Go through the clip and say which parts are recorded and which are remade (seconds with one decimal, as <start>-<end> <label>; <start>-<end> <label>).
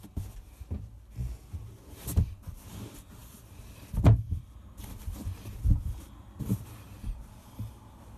0.0-8.2 recorded